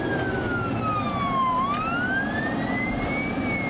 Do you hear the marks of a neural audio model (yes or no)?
no